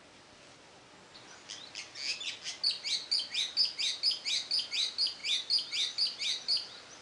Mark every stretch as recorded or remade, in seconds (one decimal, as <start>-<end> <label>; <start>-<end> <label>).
0.0-7.0 recorded

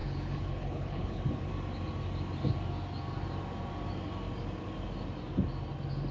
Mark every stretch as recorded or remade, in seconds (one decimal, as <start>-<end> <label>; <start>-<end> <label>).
0.0-1.2 remade; 1.2-6.1 recorded